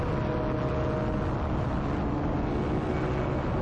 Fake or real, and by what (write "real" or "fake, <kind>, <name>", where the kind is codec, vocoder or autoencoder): real